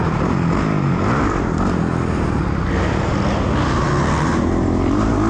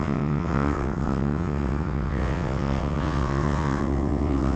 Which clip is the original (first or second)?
first